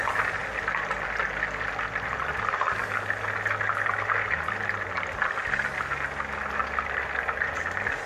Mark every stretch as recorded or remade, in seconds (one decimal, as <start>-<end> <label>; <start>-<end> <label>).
0.0-8.1 recorded